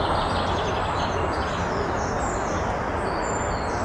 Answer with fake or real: real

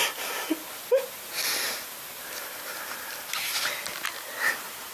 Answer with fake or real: real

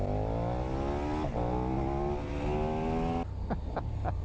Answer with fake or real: real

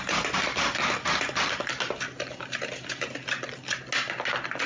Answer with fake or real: real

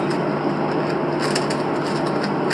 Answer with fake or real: real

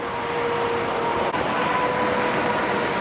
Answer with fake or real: real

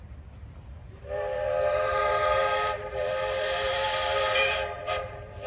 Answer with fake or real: fake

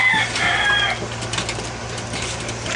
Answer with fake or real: real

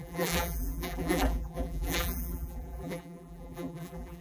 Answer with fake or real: fake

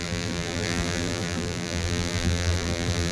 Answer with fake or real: fake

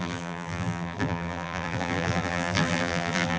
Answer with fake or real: fake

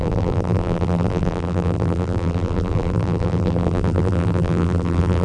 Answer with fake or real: fake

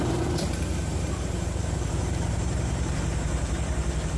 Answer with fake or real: fake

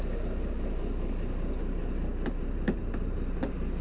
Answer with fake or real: fake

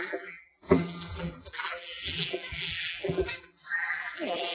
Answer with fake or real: fake